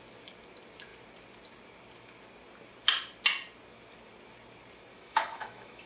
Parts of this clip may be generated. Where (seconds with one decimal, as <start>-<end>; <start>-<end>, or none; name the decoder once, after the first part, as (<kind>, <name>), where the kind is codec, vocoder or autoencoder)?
4.9-5.9 (autoencoder, DAC-VAE)